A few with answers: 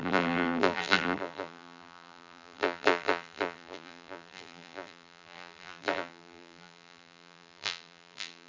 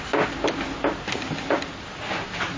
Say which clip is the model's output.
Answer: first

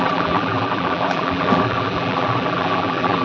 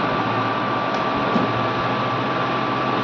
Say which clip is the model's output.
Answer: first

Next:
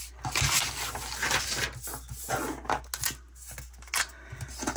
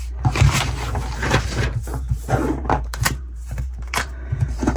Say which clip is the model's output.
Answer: second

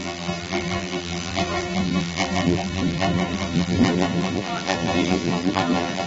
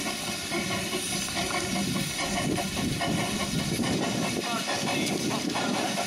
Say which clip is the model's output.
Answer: first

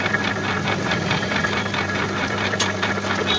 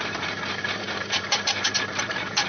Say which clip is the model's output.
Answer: second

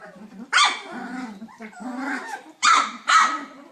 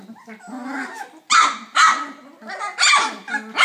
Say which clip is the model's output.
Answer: first